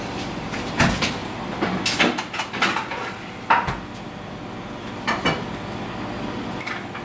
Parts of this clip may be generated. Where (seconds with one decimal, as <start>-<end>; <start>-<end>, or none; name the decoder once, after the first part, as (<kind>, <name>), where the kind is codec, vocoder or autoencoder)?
none